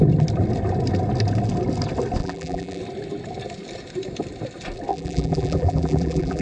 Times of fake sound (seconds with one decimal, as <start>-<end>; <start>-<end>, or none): 2.2-2.8; 4.9-6.4